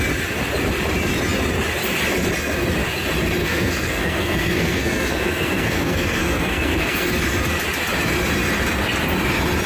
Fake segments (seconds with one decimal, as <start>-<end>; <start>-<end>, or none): 3.4-7.1